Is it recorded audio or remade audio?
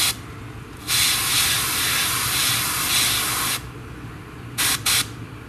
recorded